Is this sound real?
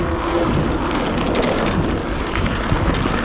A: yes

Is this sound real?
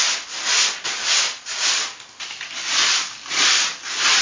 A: yes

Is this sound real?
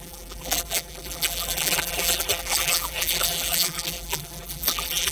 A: no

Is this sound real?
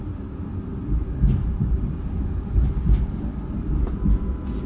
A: yes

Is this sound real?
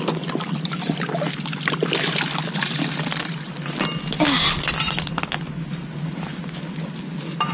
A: yes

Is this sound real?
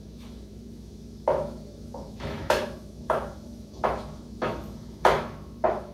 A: no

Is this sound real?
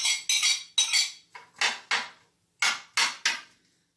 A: yes